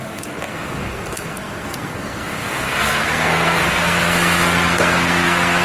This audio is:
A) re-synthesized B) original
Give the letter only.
A